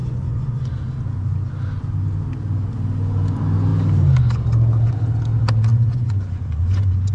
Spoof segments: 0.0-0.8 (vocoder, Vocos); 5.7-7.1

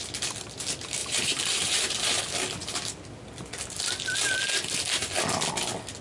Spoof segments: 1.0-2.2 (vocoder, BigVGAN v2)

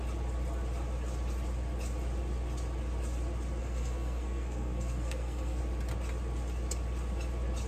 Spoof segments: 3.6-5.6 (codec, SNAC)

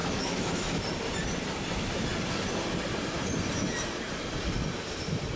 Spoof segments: 0.0-0.8 (autoencoder, DAC-VAE)

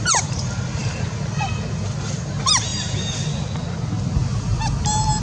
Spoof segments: 0.0-2.7 (vocoder, BigVGAN v2); 4.4-5.2